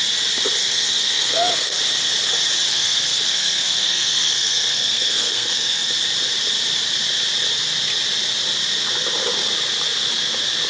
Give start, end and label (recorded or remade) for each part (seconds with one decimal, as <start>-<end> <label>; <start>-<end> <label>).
0.0-0.6 recorded; 0.6-1.8 remade; 1.8-2.7 recorded; 2.7-5.9 remade; 5.9-10.7 recorded